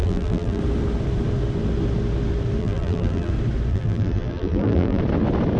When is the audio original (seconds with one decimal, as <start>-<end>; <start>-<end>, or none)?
0.6-2.6; 3.3-3.7; 5.0-5.6